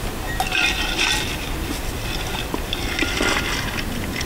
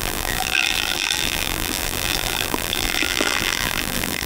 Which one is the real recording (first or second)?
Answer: first